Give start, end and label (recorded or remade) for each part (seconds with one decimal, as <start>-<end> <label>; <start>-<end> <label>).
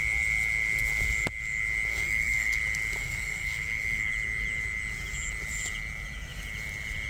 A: 0.0-1.9 recorded; 1.9-2.6 remade; 2.6-3.0 recorded; 3.0-4.1 remade; 4.1-7.1 recorded